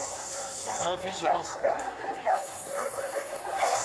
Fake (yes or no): yes